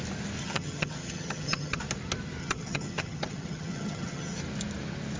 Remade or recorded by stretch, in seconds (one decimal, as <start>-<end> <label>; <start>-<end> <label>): 0.0-0.4 recorded; 0.4-1.8 remade; 1.8-2.4 recorded; 2.4-4.4 remade; 4.4-5.2 recorded